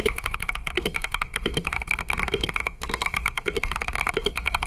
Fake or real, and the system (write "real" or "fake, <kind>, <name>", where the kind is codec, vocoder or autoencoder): fake, codec, SNAC